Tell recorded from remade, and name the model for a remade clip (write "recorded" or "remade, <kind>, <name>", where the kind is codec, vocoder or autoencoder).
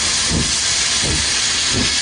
recorded